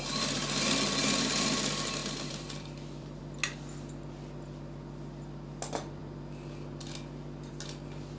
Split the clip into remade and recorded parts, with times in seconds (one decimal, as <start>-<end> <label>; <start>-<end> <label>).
0.0-2.0 recorded; 2.0-3.2 remade; 3.2-8.2 recorded